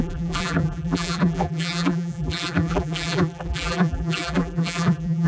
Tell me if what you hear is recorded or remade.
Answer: remade